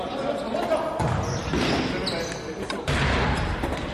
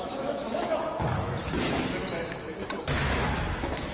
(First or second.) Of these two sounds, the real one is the first